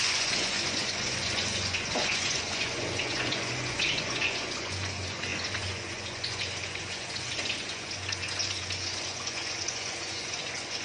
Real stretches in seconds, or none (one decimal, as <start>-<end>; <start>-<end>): none